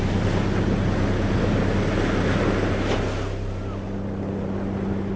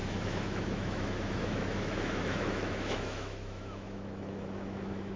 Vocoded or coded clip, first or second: second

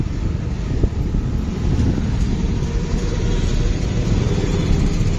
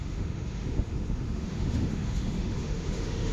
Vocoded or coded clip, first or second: second